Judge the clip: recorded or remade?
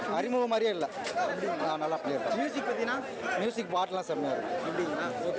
recorded